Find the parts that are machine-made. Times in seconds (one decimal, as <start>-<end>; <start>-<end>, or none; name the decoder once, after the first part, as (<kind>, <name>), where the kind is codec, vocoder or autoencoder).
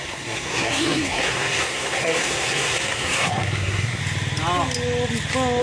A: 0.0-4.0 (codec, SNAC)